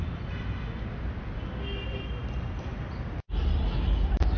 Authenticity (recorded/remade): recorded